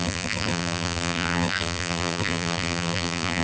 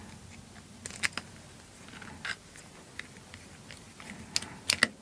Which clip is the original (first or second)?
second